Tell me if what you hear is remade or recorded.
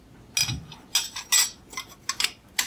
recorded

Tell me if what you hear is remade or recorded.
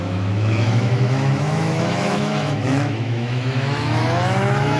remade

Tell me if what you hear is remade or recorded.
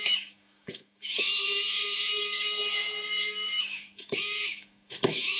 remade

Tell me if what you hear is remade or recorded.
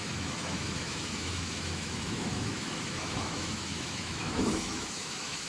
remade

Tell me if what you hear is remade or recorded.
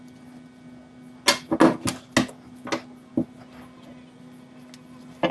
recorded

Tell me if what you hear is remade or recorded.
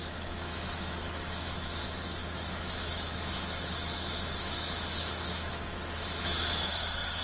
remade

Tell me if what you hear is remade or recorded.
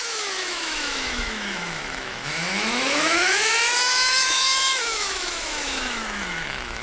remade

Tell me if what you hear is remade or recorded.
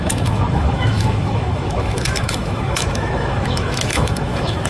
remade